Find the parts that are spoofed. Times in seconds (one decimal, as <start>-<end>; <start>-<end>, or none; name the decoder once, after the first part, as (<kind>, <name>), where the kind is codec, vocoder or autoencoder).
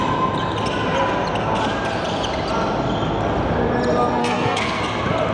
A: 4.2-4.8 (codec, SNAC)